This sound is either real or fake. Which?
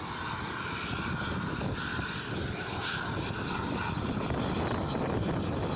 real